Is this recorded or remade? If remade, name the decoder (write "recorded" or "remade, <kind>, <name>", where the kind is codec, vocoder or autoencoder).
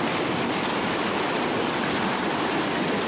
recorded